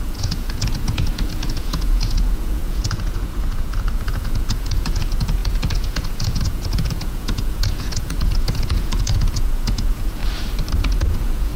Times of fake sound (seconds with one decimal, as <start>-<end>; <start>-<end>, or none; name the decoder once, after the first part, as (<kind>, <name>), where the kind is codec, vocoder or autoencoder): 0.0-10.2 (vocoder, Vocos); 10.8-11.6